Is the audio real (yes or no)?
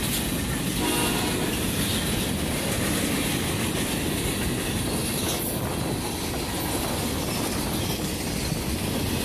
yes